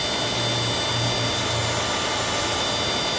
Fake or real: real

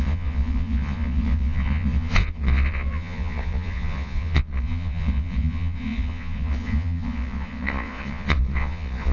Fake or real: fake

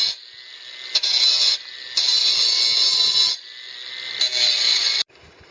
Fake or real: real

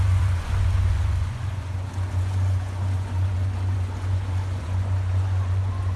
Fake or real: fake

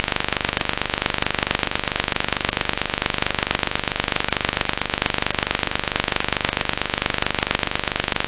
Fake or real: fake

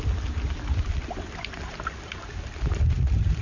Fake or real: real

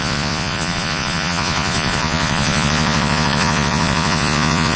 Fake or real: fake